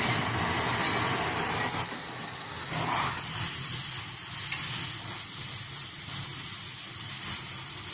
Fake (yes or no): no